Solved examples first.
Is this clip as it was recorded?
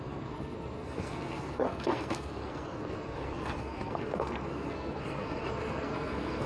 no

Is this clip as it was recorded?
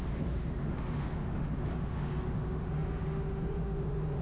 no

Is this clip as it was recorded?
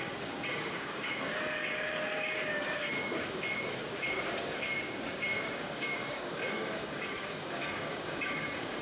no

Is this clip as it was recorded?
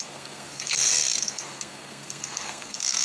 no